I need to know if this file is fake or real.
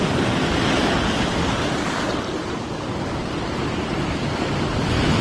real